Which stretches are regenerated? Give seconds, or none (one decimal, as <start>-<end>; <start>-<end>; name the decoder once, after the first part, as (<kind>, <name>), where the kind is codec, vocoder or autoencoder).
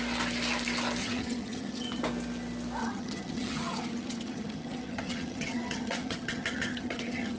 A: 1.0-2.0 (vocoder, HiFi-GAN); 2.8-7.4